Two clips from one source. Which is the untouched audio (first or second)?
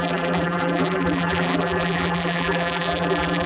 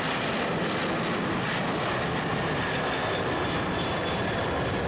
second